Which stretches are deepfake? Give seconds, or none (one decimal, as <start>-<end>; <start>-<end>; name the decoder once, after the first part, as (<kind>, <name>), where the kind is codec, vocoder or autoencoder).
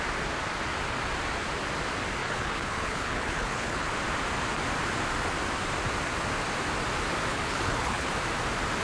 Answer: 2.2-3.9 (codec, HILCodec); 7.3-8.1